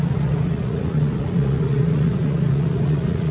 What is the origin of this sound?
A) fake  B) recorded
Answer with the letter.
A